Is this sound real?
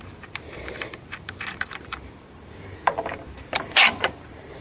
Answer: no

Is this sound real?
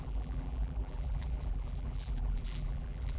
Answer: no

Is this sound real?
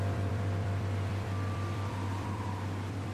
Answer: no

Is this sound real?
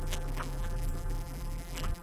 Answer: no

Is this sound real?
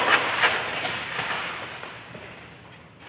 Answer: no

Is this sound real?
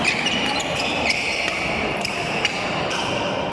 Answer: no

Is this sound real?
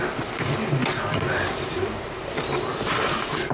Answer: no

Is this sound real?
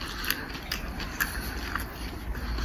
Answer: yes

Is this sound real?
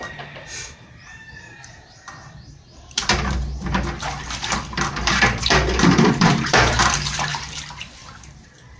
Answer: no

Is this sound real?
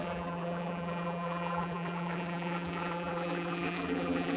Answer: no